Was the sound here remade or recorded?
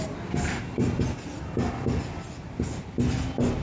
recorded